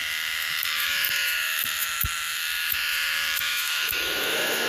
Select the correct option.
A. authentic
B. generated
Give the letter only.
B